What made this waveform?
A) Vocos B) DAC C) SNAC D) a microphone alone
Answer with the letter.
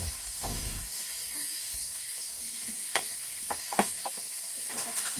B